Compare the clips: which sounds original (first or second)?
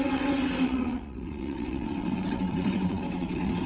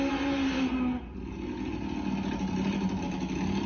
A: second